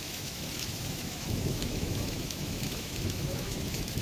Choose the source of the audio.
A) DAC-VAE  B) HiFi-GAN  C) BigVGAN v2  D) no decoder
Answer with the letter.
A